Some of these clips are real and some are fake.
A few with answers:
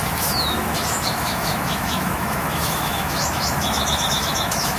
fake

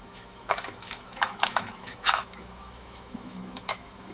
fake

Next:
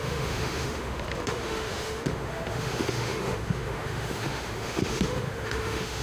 fake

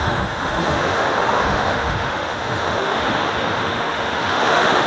fake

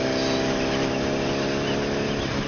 real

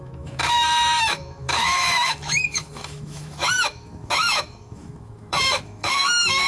fake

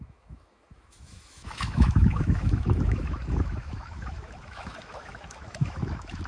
fake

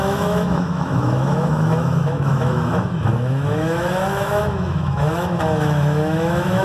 fake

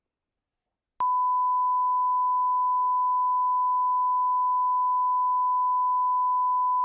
real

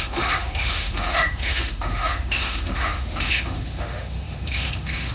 fake